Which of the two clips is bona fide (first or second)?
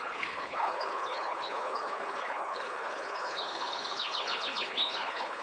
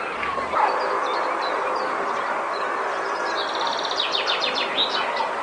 second